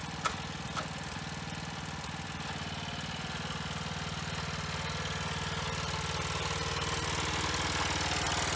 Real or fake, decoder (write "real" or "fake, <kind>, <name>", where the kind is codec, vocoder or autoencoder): real